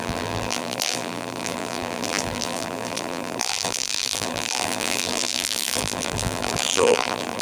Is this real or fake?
fake